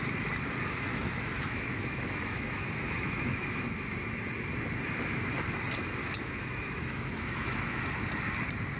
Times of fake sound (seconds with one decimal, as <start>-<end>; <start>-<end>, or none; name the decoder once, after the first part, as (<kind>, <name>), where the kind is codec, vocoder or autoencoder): 0.9-3.6 (autoencoder, DAC-VAE); 6.0-7.8